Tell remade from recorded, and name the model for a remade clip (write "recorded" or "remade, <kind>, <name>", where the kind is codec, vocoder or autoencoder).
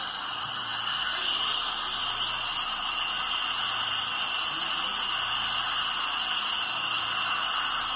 recorded